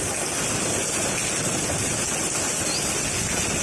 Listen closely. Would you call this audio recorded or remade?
recorded